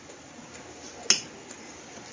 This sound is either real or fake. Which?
real